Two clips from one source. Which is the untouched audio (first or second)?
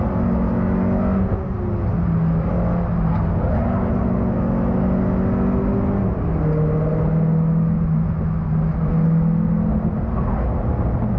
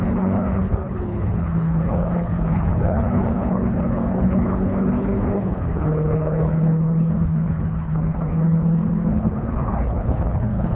first